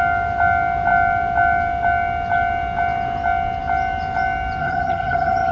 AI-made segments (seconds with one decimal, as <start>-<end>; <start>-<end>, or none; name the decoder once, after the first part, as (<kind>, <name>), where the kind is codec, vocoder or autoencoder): 4.6-5.5 (vocoder, HiFi-GAN)